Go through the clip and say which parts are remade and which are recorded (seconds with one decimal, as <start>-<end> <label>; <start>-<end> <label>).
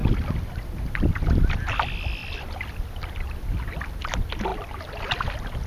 0.0-2.2 recorded; 2.2-3.1 remade; 3.1-5.7 recorded